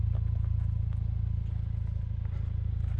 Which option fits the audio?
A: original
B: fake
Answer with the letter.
A